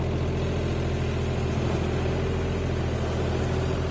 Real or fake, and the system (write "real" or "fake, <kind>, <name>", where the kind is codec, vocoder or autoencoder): real